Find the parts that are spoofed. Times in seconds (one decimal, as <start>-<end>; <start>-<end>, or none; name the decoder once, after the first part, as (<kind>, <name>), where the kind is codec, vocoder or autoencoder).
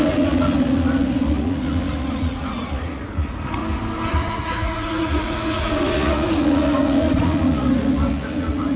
0.0-3.6 (vocoder, Vocos); 4.1-8.8